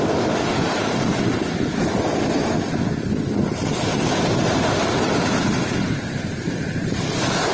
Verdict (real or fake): real